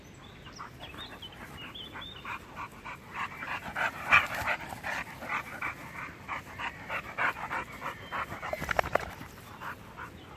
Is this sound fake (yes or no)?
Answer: no